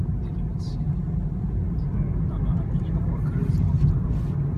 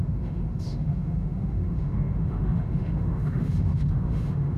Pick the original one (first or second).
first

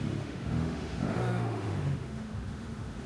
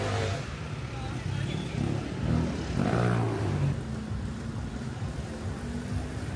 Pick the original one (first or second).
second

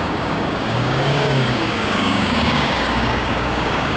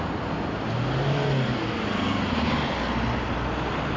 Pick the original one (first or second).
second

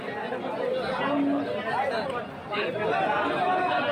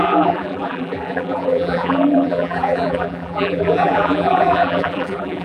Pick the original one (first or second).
first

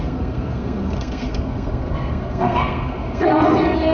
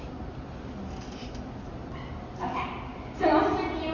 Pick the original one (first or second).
second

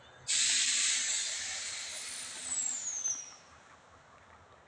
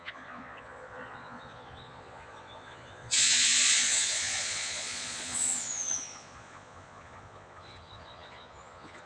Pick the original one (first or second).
first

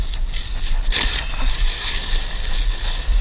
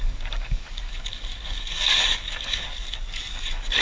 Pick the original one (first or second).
first